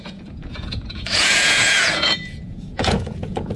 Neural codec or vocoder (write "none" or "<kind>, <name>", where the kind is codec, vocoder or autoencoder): vocoder, Vocos